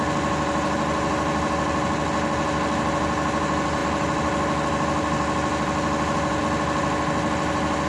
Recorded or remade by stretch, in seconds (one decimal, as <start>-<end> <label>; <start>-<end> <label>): 0.0-7.9 recorded